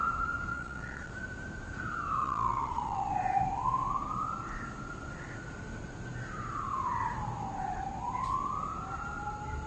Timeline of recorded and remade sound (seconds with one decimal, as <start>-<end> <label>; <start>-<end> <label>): 0.0-0.5 recorded; 0.5-1.1 remade; 1.1-2.2 recorded; 2.2-3.1 remade; 3.1-9.7 recorded